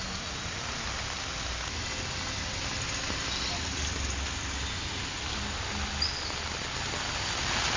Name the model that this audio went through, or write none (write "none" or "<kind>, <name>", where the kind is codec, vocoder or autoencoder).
none